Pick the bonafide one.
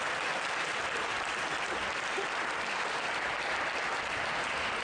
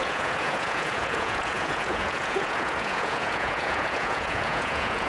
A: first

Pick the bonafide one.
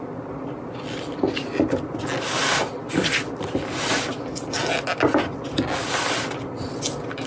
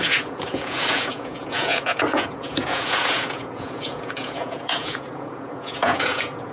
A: first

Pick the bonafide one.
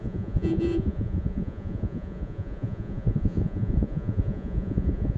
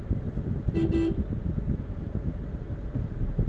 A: second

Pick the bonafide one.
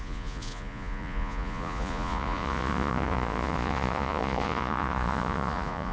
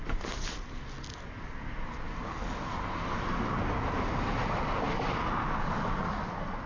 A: second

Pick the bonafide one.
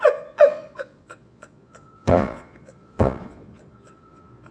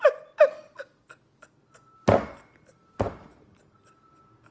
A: second